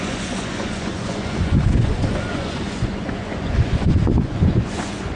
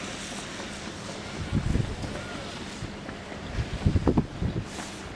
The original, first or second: second